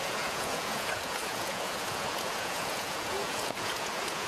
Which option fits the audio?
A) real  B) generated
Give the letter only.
B